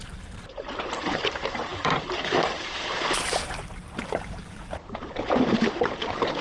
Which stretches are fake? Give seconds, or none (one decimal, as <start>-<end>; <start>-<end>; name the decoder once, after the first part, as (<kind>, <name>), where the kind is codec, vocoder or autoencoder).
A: 0.0-6.4 (vocoder, BigVGAN v2)